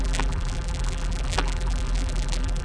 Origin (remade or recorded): remade